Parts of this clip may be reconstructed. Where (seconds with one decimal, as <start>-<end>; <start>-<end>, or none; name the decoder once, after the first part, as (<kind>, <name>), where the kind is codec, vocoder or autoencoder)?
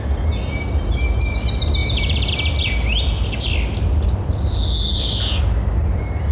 1.8-2.3 (vocoder, BigVGAN v2)